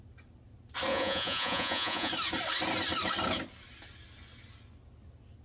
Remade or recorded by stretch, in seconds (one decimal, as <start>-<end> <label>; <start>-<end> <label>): 0.0-0.9 recorded; 0.9-2.1 remade; 2.1-5.4 recorded